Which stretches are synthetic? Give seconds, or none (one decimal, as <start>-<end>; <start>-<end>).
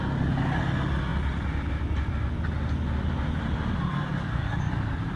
4.1-4.7